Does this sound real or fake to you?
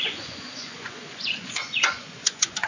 fake